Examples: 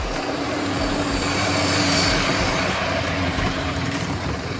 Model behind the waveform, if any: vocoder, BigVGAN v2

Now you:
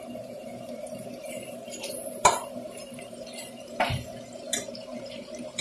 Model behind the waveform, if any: vocoder, BigVGAN v2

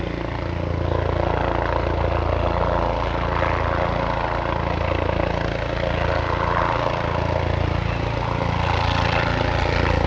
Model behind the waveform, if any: none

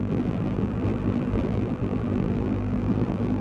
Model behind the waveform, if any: vocoder, BigVGAN v2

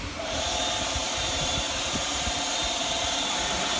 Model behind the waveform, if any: vocoder, BigVGAN v2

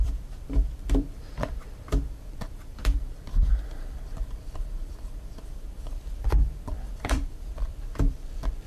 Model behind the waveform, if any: vocoder, BigVGAN v2